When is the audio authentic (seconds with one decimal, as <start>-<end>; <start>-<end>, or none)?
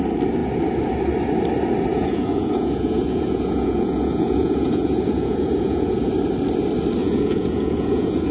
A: 0.0-1.9; 6.1-7.0